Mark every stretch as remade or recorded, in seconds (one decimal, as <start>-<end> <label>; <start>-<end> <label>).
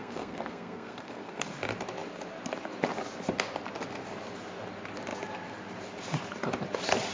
0.0-1.5 remade; 1.5-7.1 recorded